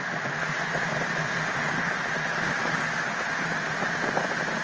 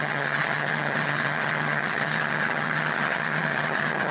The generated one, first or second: second